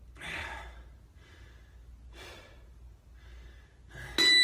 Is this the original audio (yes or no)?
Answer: yes